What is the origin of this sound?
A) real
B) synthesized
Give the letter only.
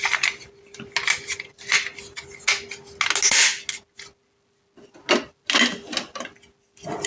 A